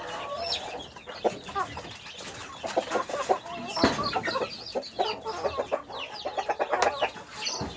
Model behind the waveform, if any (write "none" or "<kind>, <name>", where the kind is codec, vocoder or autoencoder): none